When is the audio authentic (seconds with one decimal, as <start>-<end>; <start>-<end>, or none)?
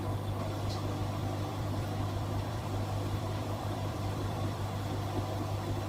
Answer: 0.0-1.2; 4.7-5.9